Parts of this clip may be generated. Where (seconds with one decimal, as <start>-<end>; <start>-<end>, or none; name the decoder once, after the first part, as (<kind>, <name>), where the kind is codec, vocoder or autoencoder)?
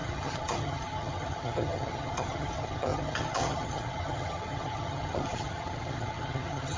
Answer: 0.0-6.8 (vocoder, HiFi-GAN)